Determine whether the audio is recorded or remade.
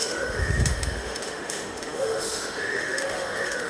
remade